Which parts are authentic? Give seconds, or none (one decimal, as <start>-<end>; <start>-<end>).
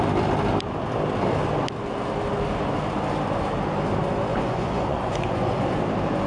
0.0-4.3; 5.7-6.3